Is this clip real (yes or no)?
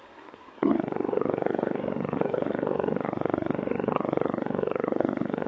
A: no